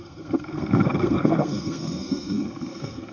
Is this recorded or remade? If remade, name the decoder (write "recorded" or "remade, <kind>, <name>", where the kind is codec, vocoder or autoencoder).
remade, codec, SNAC